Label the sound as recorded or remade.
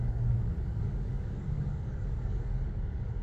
remade